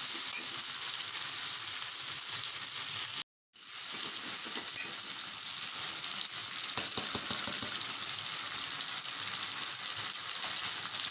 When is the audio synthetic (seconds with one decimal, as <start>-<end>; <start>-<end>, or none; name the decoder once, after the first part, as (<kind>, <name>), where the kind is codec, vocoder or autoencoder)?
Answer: none